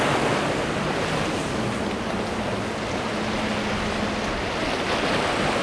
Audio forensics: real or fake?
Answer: real